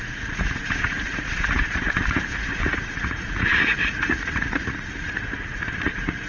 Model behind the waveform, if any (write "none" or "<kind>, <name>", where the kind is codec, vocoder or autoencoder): vocoder, Vocos